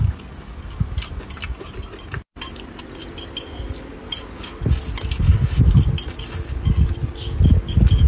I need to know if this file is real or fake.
real